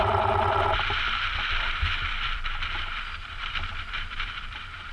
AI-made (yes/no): yes